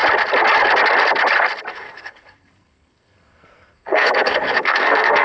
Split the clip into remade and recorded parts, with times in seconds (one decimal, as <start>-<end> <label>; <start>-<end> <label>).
0.0-1.7 recorded; 1.7-5.2 remade

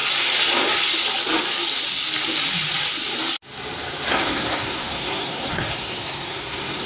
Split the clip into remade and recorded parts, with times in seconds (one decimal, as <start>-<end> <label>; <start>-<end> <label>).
0.0-4.1 recorded; 4.1-6.9 remade

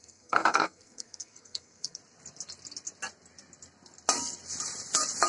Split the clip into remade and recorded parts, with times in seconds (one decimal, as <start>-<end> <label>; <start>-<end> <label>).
0.0-2.0 remade; 2.0-5.3 recorded

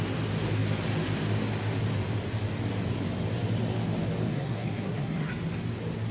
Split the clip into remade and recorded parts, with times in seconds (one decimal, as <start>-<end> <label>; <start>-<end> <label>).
0.0-4.3 recorded; 4.3-5.3 remade; 5.3-6.1 recorded

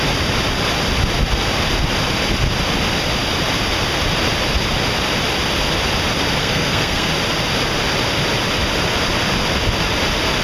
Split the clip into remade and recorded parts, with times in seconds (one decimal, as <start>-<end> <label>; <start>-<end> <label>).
0.0-6.4 recorded; 6.4-7.1 remade; 7.1-10.4 recorded

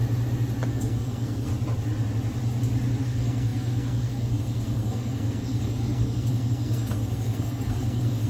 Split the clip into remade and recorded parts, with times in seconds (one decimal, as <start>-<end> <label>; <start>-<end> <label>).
0.0-0.7 recorded; 0.7-1.5 remade; 1.5-3.0 recorded; 3.0-8.3 remade

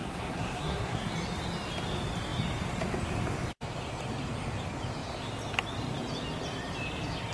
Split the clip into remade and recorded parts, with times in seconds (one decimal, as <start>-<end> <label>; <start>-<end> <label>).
0.0-1.1 remade; 1.1-7.3 recorded